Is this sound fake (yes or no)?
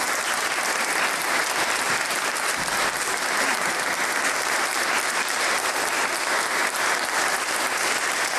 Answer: no